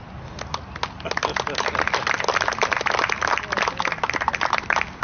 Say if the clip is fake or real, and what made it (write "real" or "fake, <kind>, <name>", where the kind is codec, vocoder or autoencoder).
real